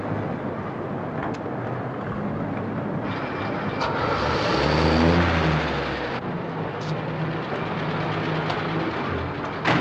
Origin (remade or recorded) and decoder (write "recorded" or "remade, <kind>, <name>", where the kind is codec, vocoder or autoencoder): recorded